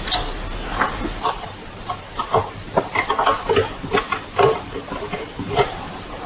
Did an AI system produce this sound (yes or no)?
yes